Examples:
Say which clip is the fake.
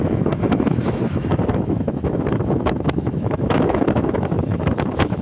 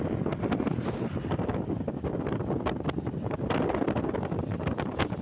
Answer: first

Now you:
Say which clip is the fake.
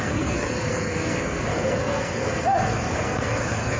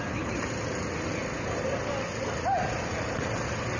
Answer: first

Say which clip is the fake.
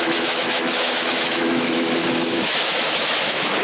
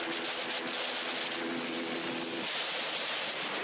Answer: first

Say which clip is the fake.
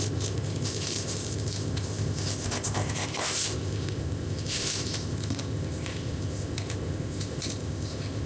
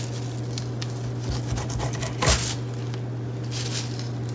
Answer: first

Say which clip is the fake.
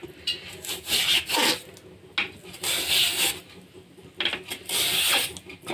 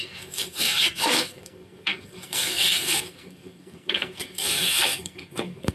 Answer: second